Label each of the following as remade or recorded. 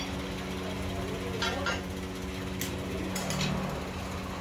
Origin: recorded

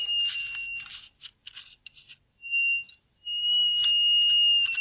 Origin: recorded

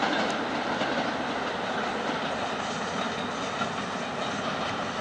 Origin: recorded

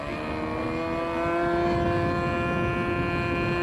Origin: recorded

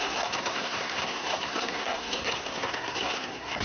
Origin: remade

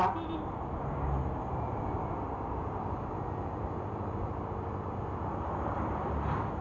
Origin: recorded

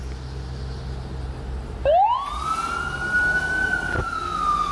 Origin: recorded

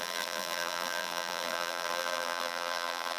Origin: remade